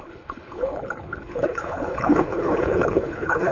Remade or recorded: remade